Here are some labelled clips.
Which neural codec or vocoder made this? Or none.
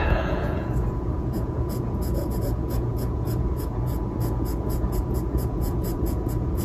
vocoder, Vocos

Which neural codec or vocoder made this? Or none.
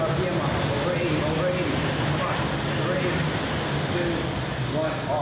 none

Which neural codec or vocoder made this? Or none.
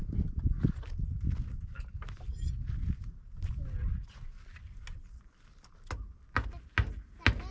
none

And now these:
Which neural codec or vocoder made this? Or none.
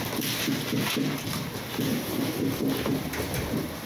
none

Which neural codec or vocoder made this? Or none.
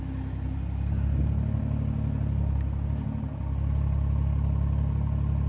none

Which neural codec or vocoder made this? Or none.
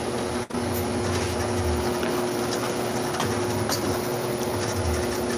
none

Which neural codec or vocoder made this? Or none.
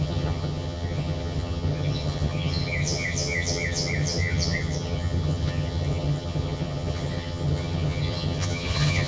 vocoder, HiFi-GAN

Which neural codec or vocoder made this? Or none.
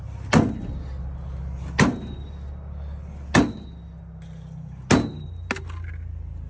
none